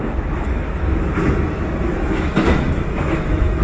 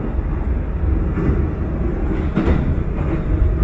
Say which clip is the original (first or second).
second